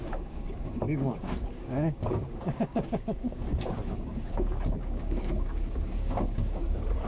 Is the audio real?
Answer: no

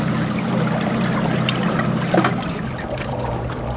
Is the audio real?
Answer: yes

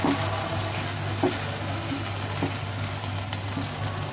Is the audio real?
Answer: yes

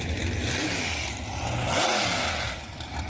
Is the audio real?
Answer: yes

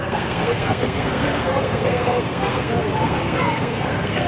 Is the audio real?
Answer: no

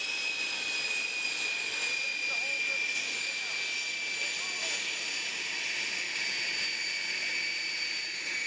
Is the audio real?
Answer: yes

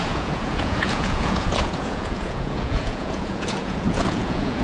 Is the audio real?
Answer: no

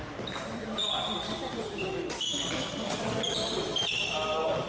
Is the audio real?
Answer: no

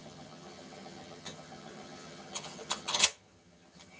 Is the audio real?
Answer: no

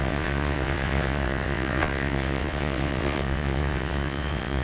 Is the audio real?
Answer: no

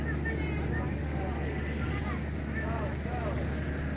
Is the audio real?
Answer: yes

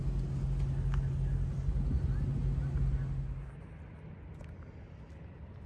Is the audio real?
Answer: yes